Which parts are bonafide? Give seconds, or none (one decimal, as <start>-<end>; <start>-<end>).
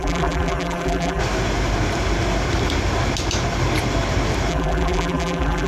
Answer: 1.2-4.5